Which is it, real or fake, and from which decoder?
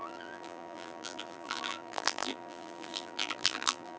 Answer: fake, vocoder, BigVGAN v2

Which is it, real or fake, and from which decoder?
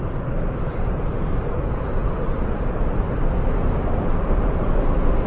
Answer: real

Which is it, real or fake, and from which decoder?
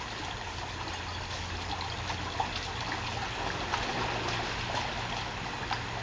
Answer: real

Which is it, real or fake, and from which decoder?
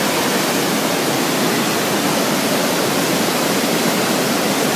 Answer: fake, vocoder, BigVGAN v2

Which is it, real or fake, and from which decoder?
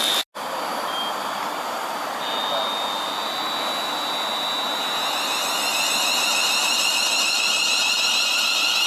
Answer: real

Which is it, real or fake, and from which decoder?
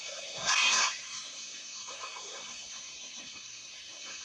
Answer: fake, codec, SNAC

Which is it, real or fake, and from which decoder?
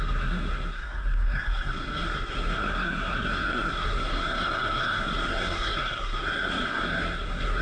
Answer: fake, codec, SNAC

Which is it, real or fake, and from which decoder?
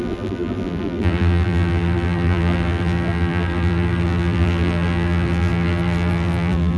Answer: fake, vocoder, BigVGAN v2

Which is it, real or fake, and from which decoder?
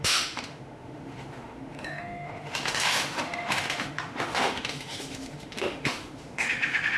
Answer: fake, autoencoder, DAC-VAE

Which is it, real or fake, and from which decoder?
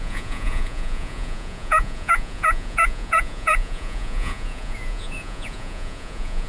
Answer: fake, vocoder, Vocos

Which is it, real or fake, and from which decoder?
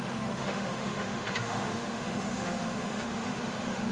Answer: fake, autoencoder, DAC-VAE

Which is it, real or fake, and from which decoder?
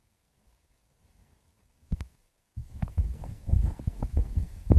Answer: fake, codec, SNAC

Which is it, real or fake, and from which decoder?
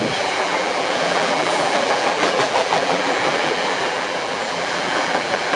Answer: fake, vocoder, BigVGAN v2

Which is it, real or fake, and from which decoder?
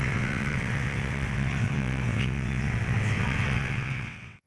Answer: fake, vocoder, WaveNeXt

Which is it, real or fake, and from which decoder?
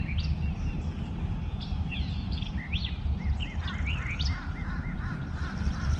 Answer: real